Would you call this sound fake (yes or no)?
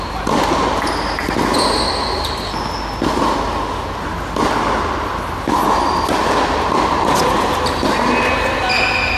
no